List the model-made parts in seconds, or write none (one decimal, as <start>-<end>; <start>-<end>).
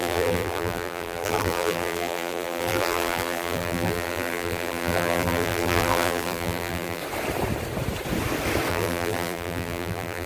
0.0-7.0; 8.7-10.3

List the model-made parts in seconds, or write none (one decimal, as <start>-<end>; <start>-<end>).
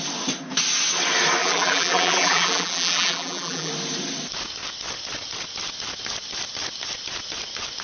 1.4-3.7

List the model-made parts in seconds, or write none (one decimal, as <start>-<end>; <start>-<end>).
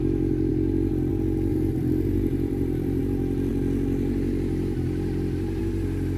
1.5-3.0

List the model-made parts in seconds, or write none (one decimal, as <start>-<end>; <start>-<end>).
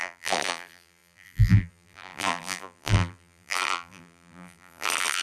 0.0-5.2